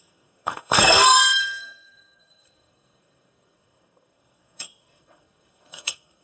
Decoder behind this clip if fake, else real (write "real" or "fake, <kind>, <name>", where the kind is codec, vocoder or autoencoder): fake, codec, SNAC